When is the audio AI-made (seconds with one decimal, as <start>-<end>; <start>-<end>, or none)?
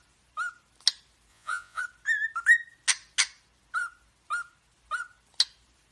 1.3-1.8